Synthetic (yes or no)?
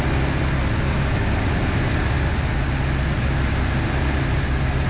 no